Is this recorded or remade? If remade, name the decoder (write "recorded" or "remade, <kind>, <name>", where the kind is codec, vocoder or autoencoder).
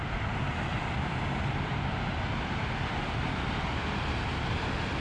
recorded